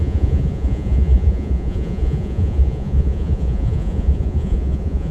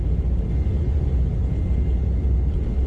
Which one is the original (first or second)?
second